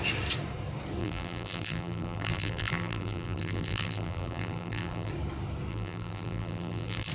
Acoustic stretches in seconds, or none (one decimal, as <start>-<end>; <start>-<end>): 0.0-1.0; 5.1-5.7